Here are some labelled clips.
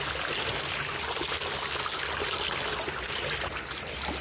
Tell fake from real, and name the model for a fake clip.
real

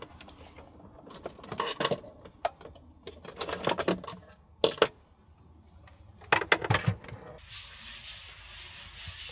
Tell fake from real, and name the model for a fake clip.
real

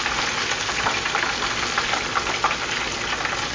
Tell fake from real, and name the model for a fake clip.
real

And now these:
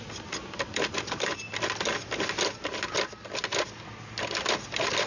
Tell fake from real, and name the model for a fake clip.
real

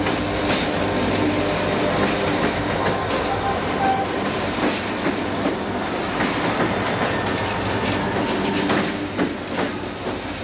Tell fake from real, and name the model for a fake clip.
real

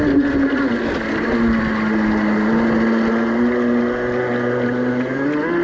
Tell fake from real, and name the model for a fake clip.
real